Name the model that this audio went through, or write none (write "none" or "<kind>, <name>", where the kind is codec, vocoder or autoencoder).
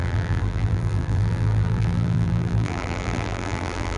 vocoder, BigVGAN v2